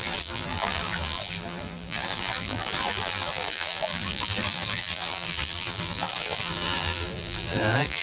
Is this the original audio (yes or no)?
no